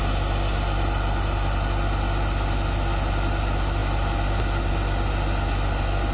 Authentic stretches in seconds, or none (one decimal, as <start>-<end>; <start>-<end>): 0.0-6.1